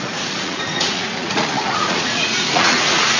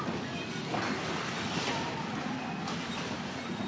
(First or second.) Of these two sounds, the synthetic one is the first